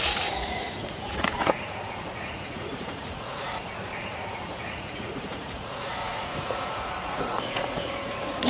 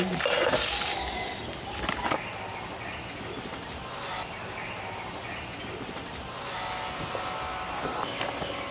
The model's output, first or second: first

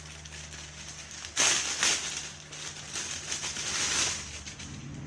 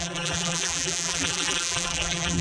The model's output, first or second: second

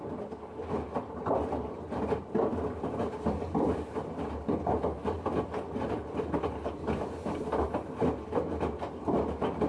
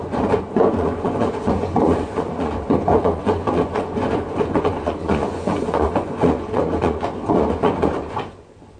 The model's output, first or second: second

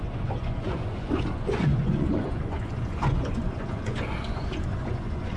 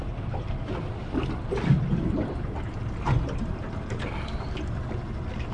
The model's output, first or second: first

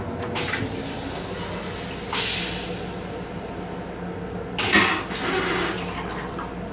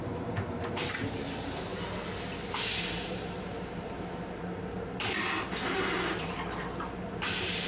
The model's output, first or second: second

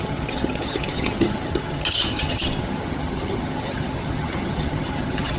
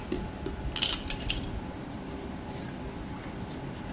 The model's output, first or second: first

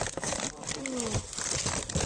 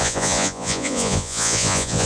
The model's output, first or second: second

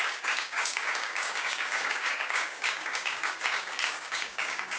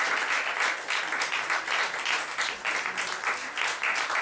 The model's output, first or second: first